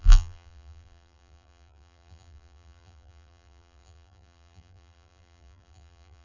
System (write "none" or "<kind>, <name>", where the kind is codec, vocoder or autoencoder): vocoder, BigVGAN v2